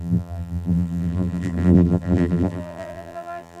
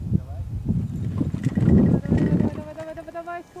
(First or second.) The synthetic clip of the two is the first